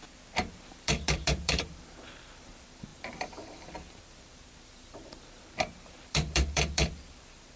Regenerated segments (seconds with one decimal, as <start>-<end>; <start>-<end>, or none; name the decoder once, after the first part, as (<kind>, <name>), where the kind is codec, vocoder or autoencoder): 0.6-7.6 (vocoder, BigVGAN v2)